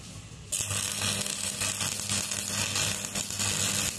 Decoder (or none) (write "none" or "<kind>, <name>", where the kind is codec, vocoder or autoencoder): none